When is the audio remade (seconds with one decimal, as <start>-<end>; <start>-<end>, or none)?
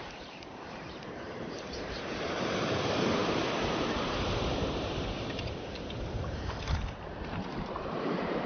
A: 0.0-8.5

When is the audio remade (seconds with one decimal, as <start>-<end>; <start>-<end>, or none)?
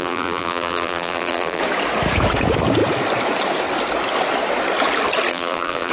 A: 0.0-1.6; 5.3-5.9